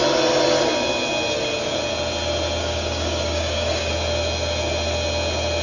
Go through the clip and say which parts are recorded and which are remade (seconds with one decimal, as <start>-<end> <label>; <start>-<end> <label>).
0.0-2.6 recorded; 2.6-3.9 remade; 3.9-5.6 recorded

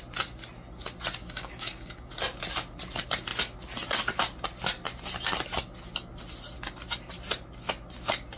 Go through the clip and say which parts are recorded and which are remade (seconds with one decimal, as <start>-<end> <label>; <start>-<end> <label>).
0.0-1.2 recorded; 1.2-2.1 remade; 2.1-8.4 recorded

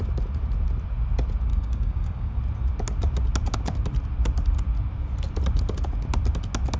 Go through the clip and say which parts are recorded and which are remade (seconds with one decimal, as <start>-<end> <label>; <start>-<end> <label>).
0.0-1.5 recorded; 1.5-2.4 remade; 2.4-6.8 recorded